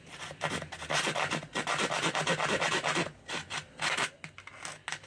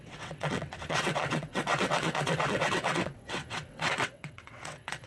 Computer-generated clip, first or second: second